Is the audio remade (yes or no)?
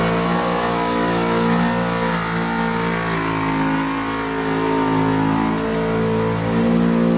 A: no